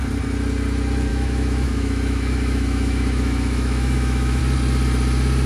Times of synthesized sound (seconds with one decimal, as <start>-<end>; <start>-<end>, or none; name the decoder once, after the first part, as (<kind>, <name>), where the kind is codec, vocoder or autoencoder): 1.1-4.4 (autoencoder, DAC-VAE)